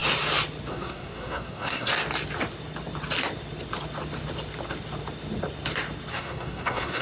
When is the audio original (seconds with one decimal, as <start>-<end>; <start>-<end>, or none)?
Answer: 0.0-0.7; 1.9-6.1